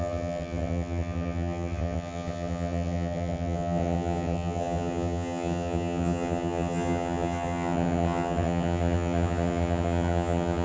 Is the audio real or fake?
fake